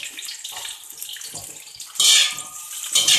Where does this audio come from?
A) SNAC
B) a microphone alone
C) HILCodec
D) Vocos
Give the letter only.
B